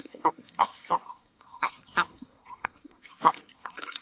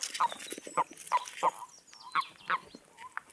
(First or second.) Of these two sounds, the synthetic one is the first